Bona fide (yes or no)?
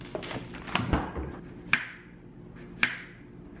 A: yes